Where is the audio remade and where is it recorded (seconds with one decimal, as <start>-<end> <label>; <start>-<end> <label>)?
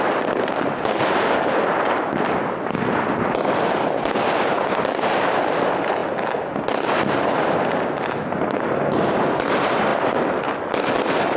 0.0-11.4 recorded